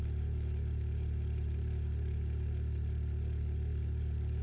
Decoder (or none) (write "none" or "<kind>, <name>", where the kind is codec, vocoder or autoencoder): none